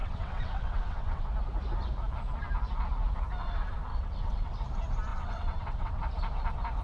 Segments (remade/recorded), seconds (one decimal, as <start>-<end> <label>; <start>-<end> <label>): 0.0-1.2 remade; 1.2-3.9 recorded; 3.9-4.5 remade; 4.5-5.1 recorded; 5.1-6.0 remade; 6.0-6.8 recorded